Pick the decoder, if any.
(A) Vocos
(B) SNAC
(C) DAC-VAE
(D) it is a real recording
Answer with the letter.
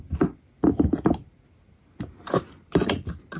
D